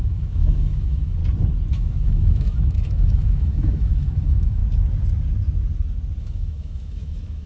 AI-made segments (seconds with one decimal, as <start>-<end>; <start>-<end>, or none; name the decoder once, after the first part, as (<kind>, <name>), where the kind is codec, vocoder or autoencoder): 0.0-1.2 (autoencoder, DAC-VAE); 1.7-4.6; 6.2-7.5